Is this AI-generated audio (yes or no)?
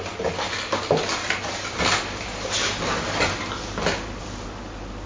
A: no